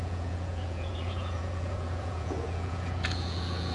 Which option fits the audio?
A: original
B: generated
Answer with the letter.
B